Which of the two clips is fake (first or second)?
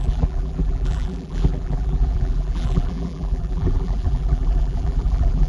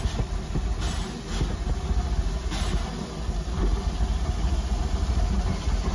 first